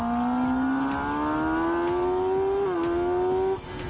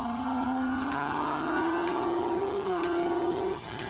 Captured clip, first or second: first